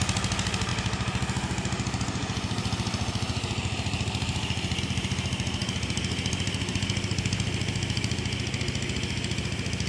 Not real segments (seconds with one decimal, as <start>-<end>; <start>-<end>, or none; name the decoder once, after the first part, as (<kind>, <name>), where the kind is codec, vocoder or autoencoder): none